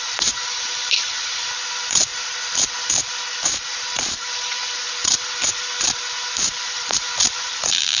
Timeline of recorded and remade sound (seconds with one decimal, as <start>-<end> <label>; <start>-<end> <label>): 0.0-2.1 remade; 2.1-3.4 recorded; 3.4-8.0 remade